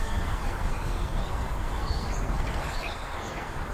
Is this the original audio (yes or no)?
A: no